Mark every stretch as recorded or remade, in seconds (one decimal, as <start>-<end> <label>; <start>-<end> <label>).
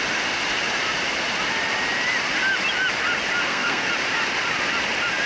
0.0-3.4 recorded; 3.4-3.9 remade; 3.9-5.3 recorded